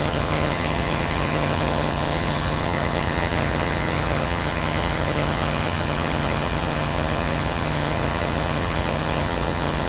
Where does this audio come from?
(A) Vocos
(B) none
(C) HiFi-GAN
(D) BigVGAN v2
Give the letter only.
C